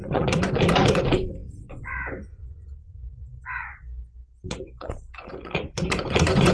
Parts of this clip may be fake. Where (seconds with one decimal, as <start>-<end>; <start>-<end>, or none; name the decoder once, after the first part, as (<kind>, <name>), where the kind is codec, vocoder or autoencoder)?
0.0-6.5 (vocoder, Vocos)